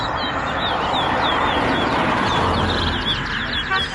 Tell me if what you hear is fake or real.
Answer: real